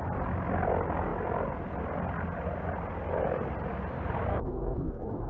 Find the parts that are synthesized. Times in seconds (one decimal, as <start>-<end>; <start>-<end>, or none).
4.3-5.3